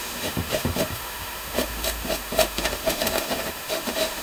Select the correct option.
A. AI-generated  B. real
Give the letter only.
A